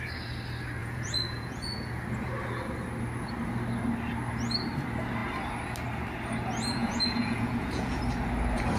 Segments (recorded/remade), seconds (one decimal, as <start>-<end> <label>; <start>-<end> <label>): 0.0-0.8 recorded; 0.8-2.0 remade; 2.0-6.8 recorded; 6.8-8.0 remade; 8.0-8.8 recorded